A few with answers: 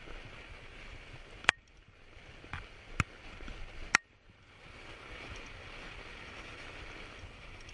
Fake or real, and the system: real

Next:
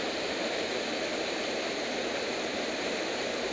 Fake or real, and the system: fake, vocoder, BigVGAN v2